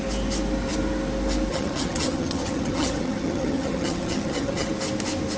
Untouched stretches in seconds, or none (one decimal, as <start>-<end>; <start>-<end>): 0.0-1.5; 4.7-5.4